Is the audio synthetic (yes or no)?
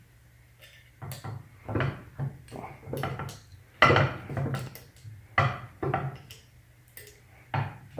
no